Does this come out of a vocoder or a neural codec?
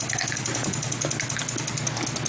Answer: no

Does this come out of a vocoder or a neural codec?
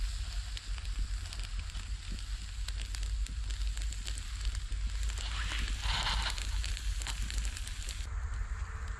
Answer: no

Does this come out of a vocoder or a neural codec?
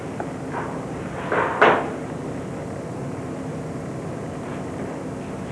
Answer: no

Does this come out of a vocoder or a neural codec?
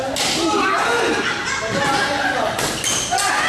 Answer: no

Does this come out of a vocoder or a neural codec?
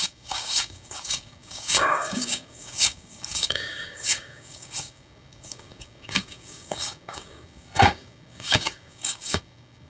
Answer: yes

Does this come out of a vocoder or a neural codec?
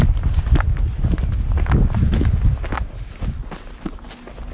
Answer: no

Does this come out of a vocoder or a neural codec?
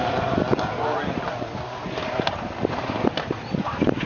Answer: no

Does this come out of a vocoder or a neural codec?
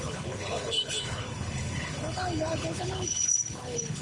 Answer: yes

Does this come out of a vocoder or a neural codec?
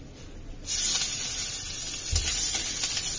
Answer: no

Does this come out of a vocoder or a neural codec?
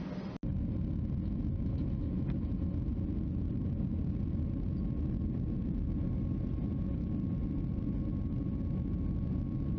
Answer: no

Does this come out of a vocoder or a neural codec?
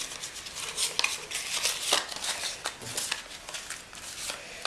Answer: no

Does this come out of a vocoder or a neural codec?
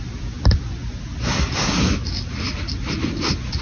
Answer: no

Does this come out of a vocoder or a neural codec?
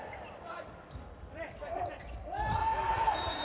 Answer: yes